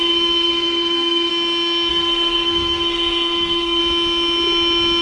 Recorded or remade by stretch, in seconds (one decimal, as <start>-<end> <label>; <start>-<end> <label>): 0.0-1.3 remade; 1.3-1.9 recorded; 1.9-3.8 remade; 3.8-5.0 recorded